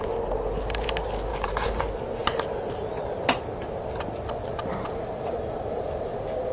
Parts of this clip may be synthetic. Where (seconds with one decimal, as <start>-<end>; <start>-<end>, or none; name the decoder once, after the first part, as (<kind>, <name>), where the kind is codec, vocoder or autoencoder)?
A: 1.3-1.8 (vocoder, BigVGAN v2); 2.2-3.2; 4.7-6.5